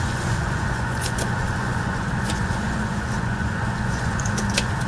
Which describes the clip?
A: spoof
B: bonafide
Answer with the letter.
A